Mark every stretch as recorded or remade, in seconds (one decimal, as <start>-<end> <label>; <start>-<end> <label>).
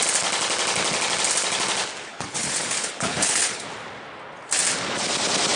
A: 0.0-2.1 recorded; 2.1-3.6 remade; 3.6-5.6 recorded